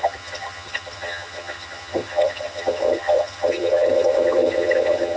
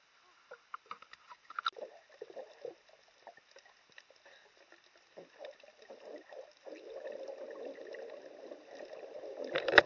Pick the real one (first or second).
second